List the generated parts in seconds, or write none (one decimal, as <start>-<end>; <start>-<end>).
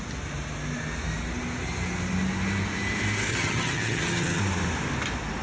3.3-4.4